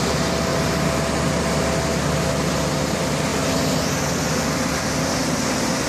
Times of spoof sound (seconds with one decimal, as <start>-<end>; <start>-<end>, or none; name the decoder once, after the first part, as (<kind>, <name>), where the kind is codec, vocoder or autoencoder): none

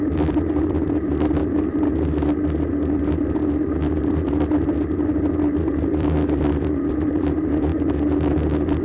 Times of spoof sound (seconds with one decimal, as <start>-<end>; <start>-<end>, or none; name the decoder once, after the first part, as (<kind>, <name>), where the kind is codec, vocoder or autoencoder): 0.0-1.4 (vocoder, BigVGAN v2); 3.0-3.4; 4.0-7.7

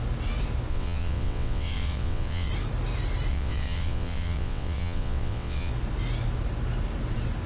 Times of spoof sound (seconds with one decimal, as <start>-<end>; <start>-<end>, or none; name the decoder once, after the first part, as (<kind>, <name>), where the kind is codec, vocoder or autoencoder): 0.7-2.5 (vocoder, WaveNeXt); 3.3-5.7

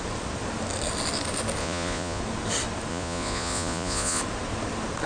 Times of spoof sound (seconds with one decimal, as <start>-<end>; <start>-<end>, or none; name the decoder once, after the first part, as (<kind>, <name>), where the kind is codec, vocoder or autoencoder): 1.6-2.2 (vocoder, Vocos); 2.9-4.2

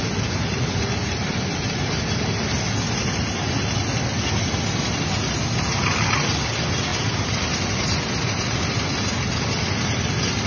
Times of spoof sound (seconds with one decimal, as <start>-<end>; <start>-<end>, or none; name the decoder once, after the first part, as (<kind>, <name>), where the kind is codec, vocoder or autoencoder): none

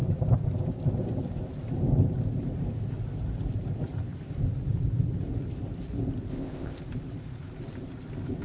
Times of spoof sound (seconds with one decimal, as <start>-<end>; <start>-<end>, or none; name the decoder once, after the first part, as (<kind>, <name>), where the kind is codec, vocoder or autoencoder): 6.3-6.8 (codec, ZipCodec)

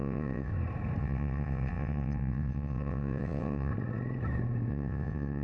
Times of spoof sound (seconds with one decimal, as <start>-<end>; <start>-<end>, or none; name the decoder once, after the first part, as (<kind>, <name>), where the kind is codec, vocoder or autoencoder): 0.0-0.5 (vocoder, WaveNeXt); 1.0-3.7; 4.7-5.4

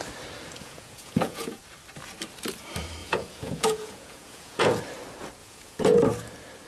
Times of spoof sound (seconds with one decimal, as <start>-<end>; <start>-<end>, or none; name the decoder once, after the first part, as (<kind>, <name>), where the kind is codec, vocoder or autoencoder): 0.6-1.6 (vocoder, Vocos); 3.0-4.8; 5.4-6.0